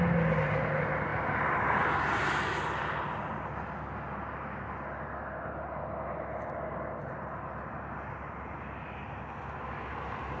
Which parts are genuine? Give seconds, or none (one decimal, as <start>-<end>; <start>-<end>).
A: 0.0-1.1; 2.0-10.4

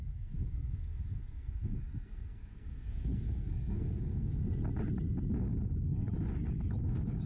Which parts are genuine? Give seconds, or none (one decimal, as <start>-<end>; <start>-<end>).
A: 4.3-7.3

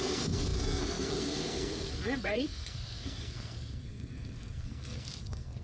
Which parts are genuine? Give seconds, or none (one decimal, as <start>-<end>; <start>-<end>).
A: none

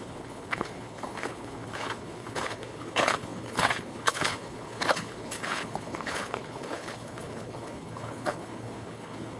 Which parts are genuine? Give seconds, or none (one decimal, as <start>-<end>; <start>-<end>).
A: none

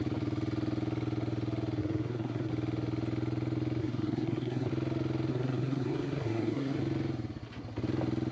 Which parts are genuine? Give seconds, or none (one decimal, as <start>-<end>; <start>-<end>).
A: 0.0-1.8; 2.5-3.8; 4.7-5.3; 6.8-8.3